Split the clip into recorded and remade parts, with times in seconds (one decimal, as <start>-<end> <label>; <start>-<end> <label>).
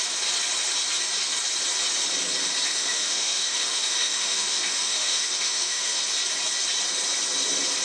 0.0-2.7 recorded; 2.7-6.0 remade; 6.0-7.8 recorded